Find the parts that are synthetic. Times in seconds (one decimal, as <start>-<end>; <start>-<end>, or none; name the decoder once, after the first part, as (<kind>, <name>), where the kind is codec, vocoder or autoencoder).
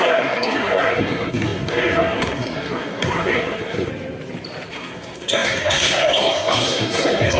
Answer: 0.0-3.9 (codec, SNAC); 4.7-7.4